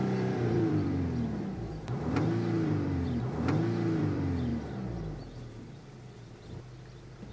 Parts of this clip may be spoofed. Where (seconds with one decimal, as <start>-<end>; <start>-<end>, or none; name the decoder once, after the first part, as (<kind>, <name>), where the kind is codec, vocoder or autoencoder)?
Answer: 0.0-4.5 (vocoder, BigVGAN v2); 6.3-7.3